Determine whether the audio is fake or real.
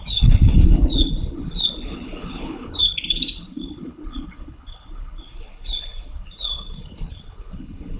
fake